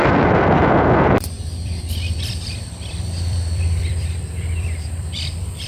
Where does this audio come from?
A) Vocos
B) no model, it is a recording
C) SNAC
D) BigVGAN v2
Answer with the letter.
D